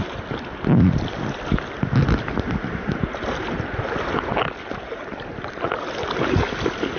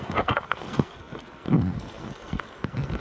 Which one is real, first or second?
first